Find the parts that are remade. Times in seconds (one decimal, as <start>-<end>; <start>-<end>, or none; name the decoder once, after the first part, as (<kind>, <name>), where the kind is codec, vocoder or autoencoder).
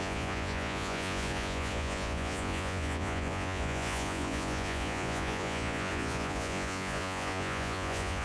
0.0-8.2 (vocoder, Vocos)